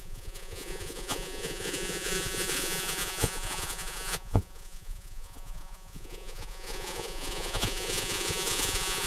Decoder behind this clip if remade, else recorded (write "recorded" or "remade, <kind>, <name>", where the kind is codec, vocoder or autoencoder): remade, vocoder, Vocos